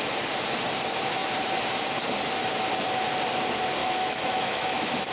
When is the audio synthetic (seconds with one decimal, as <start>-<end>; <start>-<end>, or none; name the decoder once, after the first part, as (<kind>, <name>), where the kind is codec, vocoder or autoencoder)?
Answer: 3.8-5.1 (autoencoder, DAC-VAE)